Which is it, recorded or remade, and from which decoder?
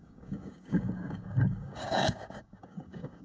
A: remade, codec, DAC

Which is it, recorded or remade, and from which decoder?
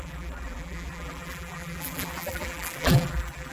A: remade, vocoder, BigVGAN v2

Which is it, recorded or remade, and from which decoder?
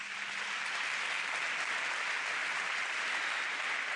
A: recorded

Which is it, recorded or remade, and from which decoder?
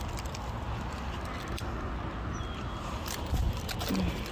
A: recorded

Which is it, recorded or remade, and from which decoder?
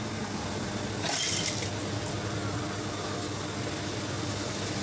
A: recorded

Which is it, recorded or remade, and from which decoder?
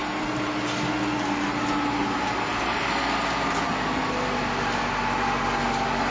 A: recorded